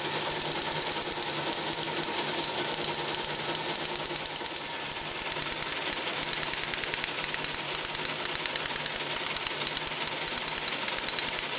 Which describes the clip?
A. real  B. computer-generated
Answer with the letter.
A